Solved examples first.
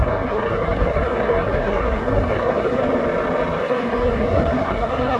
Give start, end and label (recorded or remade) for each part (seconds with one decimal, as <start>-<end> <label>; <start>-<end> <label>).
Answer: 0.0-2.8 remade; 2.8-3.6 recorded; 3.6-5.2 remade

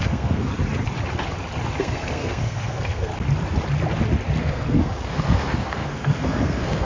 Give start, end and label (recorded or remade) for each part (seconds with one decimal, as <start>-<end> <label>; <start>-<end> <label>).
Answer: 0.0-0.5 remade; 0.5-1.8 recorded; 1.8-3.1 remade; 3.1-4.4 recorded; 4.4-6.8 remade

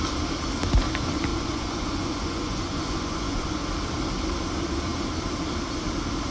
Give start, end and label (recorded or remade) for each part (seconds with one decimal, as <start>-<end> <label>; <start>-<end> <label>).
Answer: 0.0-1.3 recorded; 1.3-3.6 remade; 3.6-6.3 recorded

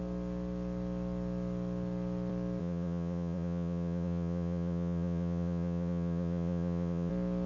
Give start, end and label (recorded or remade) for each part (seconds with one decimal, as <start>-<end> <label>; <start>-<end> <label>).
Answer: 0.0-2.6 recorded; 2.6-7.1 remade; 7.1-7.5 recorded

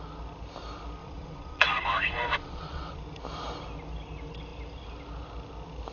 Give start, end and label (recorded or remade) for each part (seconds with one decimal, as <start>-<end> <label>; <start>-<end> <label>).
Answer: 0.0-1.0 recorded; 1.0-3.0 remade; 3.0-5.9 recorded

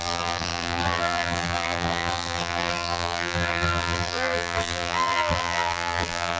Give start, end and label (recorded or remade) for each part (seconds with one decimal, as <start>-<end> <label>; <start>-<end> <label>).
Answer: 0.0-6.4 remade

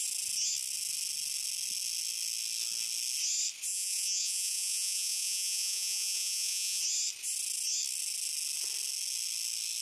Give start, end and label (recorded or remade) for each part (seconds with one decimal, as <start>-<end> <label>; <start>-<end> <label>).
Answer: 0.0-3.7 recorded; 3.7-6.8 remade; 6.8-9.8 recorded